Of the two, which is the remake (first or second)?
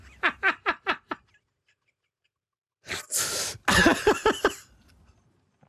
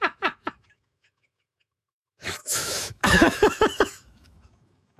second